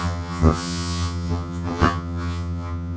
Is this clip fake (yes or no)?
yes